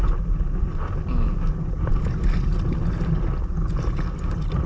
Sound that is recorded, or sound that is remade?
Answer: recorded